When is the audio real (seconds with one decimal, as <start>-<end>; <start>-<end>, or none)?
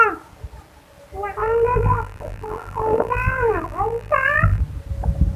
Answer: 0.0-1.4; 4.6-5.4